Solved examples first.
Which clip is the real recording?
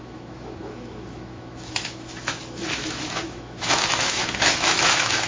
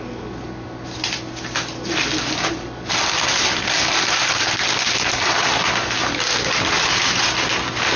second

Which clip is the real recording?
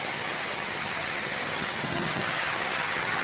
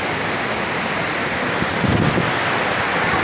second